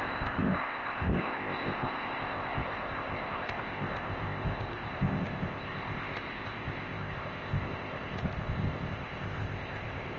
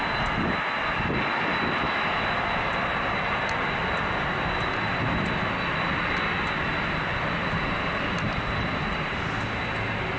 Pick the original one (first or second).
second